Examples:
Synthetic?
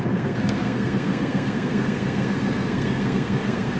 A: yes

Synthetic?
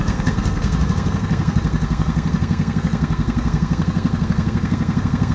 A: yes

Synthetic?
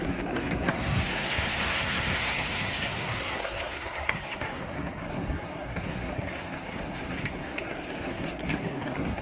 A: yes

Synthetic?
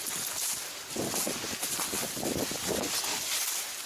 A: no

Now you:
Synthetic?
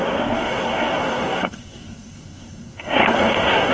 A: yes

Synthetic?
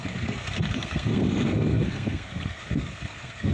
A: yes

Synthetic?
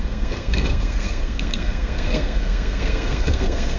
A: yes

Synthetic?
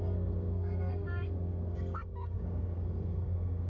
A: yes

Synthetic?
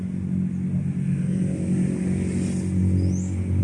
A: no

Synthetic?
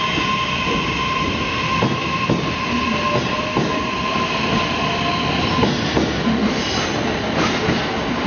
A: no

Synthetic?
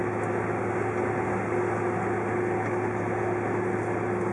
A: no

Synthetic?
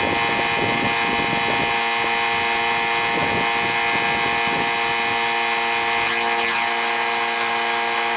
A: no